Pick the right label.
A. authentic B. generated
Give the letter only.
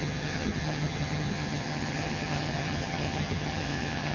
B